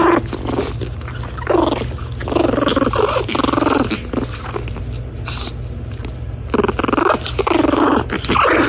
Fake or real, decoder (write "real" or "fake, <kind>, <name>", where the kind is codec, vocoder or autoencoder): real